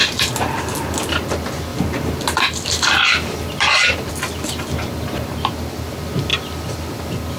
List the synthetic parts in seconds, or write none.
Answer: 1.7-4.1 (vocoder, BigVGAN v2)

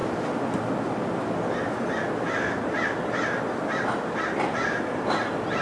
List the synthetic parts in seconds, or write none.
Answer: none

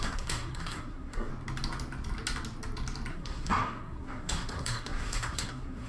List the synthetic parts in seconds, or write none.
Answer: 0.0-1.3 (codec, SNAC); 3.1-5.9

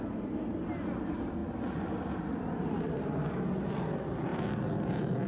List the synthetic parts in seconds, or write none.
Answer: none

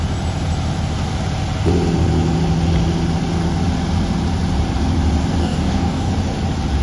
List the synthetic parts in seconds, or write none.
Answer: 5.4-6.1 (codec, DAC)